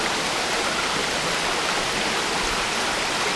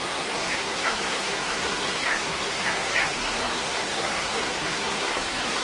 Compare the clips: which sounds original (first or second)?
first